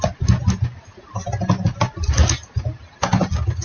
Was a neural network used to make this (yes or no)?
no